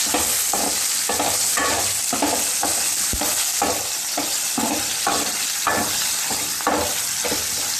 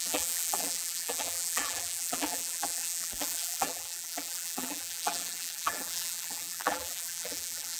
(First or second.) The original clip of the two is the first